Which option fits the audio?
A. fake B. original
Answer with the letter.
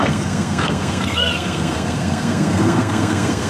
A